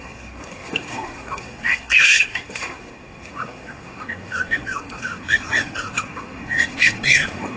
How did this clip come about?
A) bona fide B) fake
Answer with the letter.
B